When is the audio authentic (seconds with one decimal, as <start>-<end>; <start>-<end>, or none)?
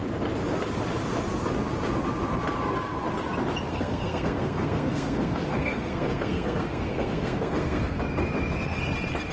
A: 0.0-3.7; 8.0-9.3